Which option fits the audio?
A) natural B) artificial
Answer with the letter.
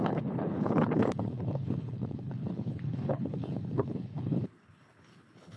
B